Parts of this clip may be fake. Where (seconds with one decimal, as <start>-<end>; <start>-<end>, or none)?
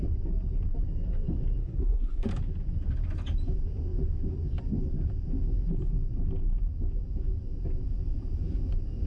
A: 1.6-2.3